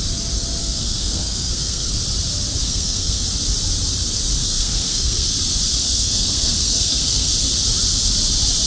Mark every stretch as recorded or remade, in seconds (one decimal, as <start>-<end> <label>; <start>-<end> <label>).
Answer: 0.0-0.6 recorded; 0.6-1.9 remade; 1.9-2.6 recorded; 2.6-3.2 remade; 3.2-4.4 recorded; 4.4-5.3 remade; 5.3-5.7 recorded; 5.7-7.3 remade; 7.3-8.7 recorded